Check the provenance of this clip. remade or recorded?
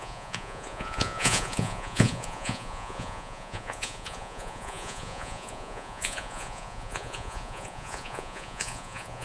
remade